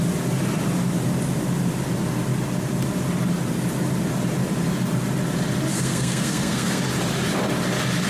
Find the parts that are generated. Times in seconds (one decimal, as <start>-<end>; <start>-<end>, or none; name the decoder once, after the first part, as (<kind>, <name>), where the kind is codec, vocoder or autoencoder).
5.7-6.8 (codec, SNAC)